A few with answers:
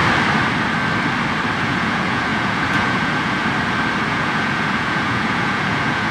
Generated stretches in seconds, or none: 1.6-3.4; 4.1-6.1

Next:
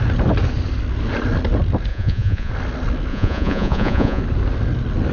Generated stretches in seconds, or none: 1.9-2.5; 3.1-4.2

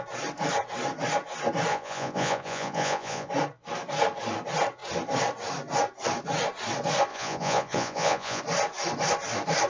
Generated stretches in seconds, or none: 1.7-3.3; 7.1-8.4

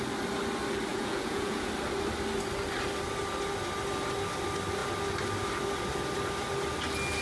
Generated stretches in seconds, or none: 0.9-1.7

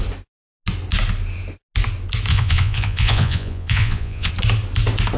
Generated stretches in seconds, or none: 2.3-4.3

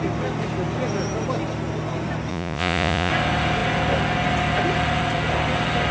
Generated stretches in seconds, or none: 2.3-3.1

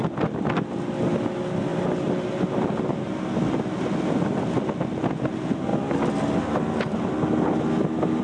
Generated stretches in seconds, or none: none

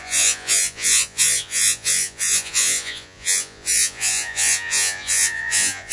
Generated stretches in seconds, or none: 0.0-5.9